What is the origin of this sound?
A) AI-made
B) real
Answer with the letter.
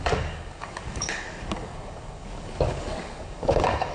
A